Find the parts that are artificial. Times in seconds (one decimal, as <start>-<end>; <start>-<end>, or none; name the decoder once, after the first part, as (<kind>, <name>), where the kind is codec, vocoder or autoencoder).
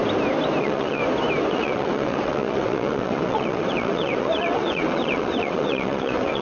0.6-1.0 (vocoder, WaveNeXt); 1.5-6.4